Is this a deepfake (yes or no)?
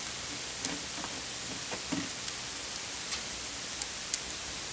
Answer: yes